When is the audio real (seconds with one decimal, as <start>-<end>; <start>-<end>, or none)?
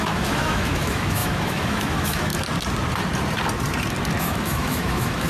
2.3-4.2